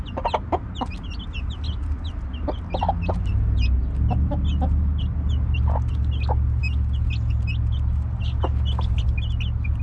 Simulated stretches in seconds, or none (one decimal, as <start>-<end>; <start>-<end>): none